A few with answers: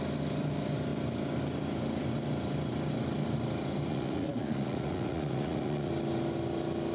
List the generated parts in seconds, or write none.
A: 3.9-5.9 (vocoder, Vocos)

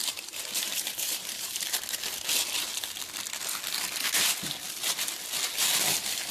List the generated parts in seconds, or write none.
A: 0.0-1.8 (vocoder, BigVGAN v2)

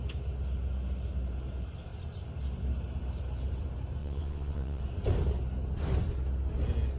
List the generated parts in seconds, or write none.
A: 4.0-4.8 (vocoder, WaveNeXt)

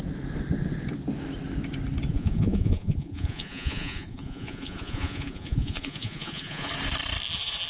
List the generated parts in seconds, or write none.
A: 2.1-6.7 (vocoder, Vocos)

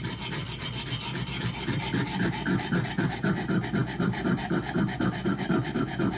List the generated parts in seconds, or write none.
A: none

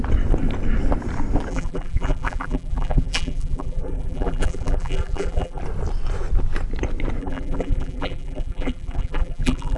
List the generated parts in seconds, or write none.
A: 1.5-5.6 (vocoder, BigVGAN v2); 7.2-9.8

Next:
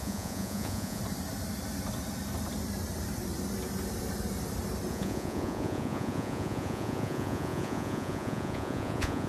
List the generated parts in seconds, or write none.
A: 0.0-1.0 (vocoder, Vocos); 4.9-9.3